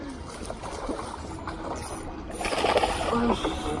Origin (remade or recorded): recorded